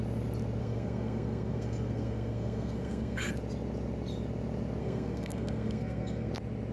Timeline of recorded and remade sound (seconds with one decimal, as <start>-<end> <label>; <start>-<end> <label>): 0.0-0.6 recorded; 0.6-3.3 remade; 3.3-4.8 recorded; 4.8-6.3 remade; 6.3-6.7 recorded